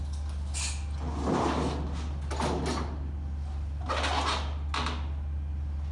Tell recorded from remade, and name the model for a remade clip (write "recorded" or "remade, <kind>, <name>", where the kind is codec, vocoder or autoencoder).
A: recorded